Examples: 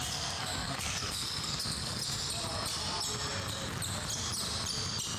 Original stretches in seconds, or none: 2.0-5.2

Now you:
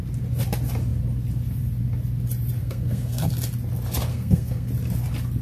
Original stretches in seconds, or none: 0.0-2.6; 3.3-4.1; 4.7-5.4

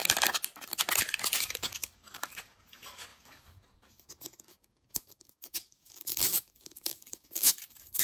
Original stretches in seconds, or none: 0.0-1.4

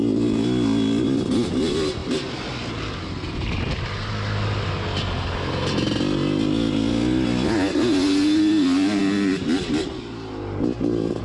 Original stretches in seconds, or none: 0.0-11.2